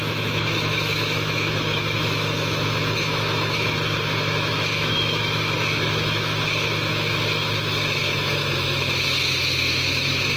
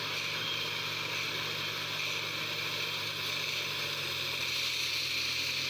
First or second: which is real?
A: second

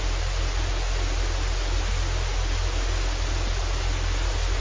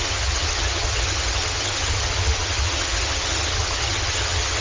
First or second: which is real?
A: first